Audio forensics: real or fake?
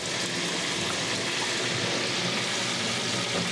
real